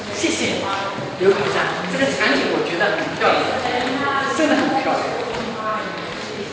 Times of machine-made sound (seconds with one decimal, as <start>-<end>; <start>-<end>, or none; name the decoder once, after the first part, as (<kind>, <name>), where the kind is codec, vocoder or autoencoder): 0.0-5.7 (vocoder, BigVGAN v2)